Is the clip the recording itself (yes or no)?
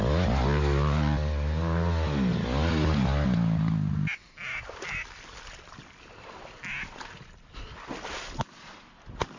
yes